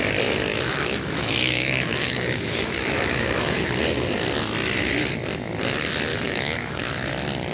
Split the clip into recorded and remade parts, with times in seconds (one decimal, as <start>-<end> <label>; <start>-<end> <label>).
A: 0.0-0.5 recorded; 0.5-3.8 remade; 3.8-6.1 recorded; 6.1-6.8 remade; 6.8-7.5 recorded